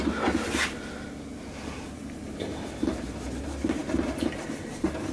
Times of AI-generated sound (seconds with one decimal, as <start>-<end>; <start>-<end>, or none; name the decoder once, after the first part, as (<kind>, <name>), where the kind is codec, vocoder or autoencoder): 1.3-2.4 (vocoder, BigVGAN v2)